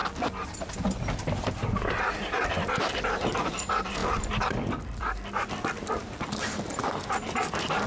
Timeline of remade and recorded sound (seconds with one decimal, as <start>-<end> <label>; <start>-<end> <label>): 0.0-7.9 recorded